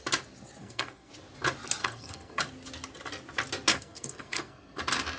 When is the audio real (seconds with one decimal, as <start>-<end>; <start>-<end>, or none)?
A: 0.0-0.6; 1.1-1.8; 2.4-3.7; 4.8-5.2